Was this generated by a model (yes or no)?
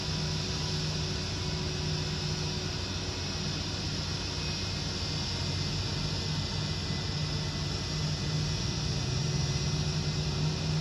no